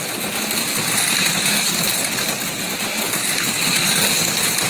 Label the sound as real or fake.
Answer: real